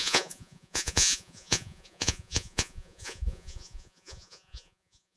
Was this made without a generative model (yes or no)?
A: no